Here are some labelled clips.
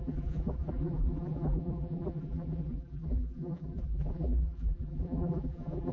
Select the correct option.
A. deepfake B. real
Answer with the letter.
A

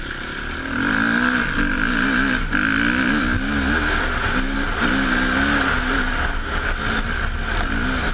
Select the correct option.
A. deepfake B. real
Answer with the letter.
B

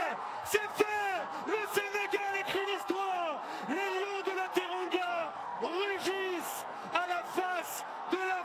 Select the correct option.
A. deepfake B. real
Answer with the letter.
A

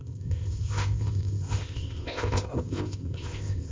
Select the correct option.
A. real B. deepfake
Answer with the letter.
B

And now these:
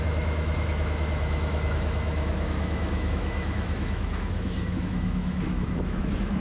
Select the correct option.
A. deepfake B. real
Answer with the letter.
A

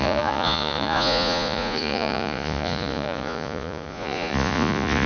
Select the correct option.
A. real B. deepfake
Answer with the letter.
B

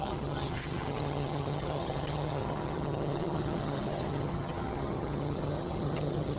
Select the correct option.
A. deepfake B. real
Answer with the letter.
A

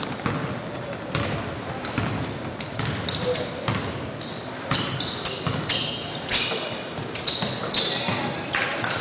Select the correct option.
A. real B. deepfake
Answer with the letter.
A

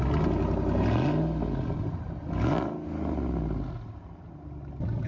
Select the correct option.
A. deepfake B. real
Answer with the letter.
B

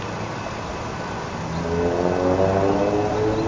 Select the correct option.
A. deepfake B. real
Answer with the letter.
B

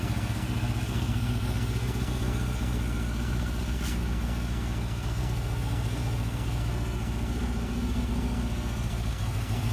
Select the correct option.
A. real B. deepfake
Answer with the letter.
B